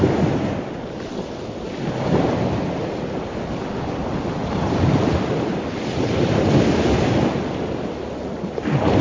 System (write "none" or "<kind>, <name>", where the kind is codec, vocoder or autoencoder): none